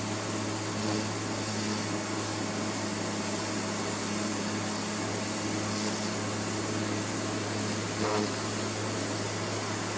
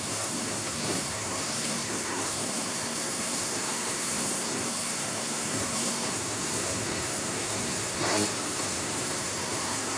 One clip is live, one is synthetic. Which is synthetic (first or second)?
second